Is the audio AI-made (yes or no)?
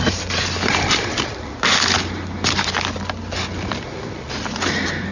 no